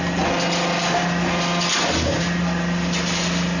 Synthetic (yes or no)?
no